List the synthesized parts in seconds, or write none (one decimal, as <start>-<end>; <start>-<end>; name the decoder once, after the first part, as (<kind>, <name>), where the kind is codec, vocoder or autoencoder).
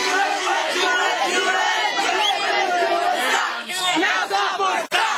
0.0-0.7 (codec, SNAC); 3.5-4.1